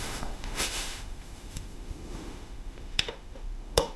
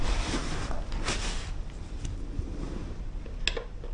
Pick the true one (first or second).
second